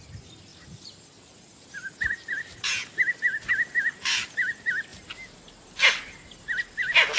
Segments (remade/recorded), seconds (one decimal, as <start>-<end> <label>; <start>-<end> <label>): 0.0-7.2 recorded